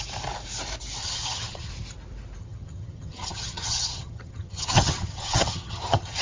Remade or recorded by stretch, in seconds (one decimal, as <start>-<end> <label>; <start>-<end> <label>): 0.0-1.0 recorded; 1.0-1.7 remade; 1.7-2.4 recorded; 2.4-6.2 remade